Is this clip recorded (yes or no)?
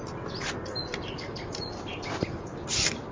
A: yes